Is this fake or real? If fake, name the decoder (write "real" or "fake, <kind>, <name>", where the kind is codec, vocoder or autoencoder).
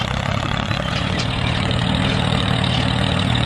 fake, vocoder, Vocos